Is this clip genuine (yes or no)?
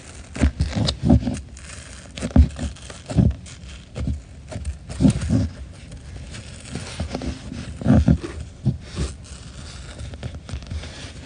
yes